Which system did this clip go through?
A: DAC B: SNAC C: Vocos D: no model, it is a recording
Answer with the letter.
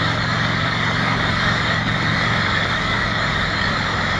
A